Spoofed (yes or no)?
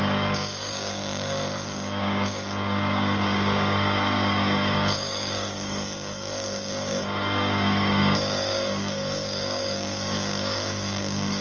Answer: yes